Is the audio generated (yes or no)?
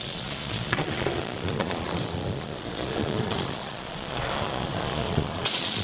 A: yes